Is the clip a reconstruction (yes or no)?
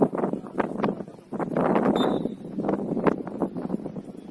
no